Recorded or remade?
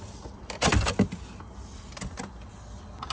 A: recorded